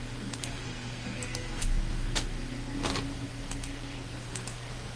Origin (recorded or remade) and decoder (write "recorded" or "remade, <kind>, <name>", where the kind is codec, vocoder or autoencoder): remade, codec, SNAC